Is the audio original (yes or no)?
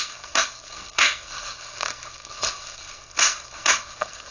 no